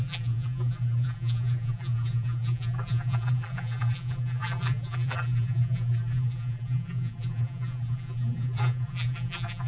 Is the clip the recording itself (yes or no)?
no